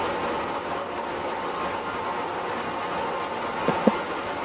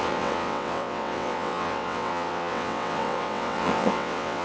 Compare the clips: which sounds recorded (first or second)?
first